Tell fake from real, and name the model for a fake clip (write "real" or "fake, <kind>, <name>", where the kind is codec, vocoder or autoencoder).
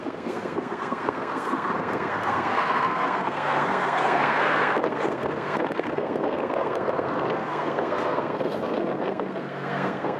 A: fake, codec, SNAC